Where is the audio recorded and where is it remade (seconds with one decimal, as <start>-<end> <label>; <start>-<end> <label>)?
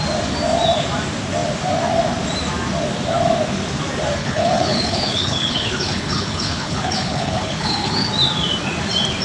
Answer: 0.0-4.2 recorded; 4.2-8.1 remade; 8.1-9.2 recorded